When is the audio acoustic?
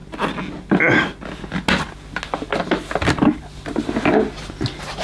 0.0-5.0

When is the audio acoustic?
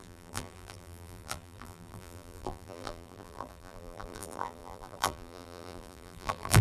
none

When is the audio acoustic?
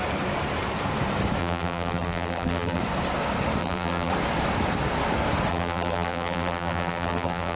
0.0-1.4; 2.8-3.6; 4.1-5.5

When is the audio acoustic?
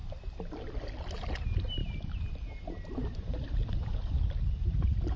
0.0-1.3; 1.8-3.7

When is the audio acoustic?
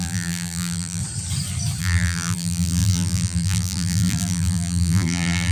1.0-1.8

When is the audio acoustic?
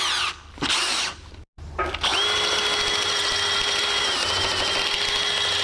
0.0-5.6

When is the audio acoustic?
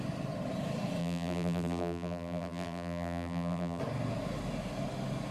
0.0-1.0; 3.8-5.3